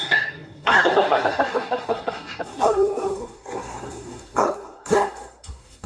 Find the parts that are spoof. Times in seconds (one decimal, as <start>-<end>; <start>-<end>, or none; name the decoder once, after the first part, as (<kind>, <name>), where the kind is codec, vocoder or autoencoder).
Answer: 0.0-5.9 (codec, SNAC)